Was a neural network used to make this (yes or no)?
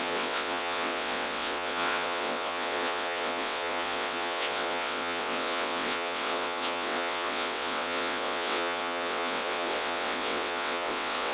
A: yes